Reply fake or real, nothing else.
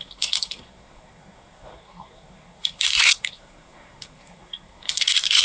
fake